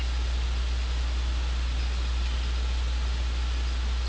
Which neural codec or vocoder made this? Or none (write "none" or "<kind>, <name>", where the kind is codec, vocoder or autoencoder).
none